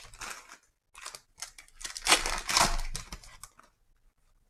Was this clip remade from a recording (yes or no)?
no